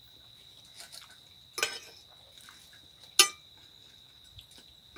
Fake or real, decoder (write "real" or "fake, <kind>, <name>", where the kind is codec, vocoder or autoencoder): real